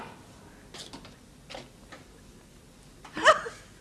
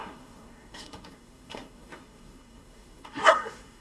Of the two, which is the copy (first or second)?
second